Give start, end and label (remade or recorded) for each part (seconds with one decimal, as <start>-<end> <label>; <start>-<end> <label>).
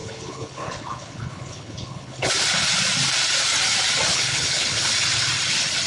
0.0-2.3 remade; 2.3-4.1 recorded; 4.1-4.9 remade; 4.9-5.9 recorded